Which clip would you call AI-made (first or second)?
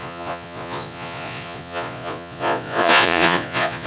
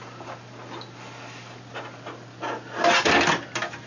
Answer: first